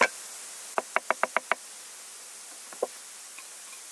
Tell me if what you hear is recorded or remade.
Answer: recorded